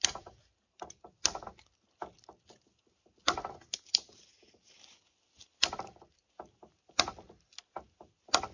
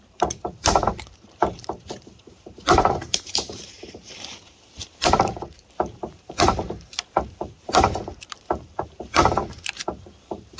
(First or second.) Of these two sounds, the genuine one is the first